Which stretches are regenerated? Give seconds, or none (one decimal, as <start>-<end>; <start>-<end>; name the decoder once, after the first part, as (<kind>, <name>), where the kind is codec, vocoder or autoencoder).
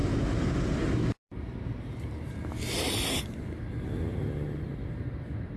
0.0-3.2 (vocoder, BigVGAN v2); 4.1-5.6